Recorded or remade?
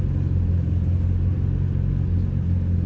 recorded